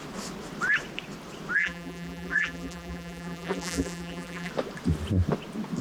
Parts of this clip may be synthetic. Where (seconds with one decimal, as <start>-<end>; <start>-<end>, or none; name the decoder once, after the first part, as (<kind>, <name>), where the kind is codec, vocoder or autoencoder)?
1.6-4.5 (vocoder, BigVGAN v2)